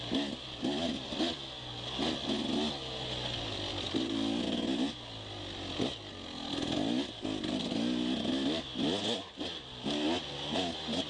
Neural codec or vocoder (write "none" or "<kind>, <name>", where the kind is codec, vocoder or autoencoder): none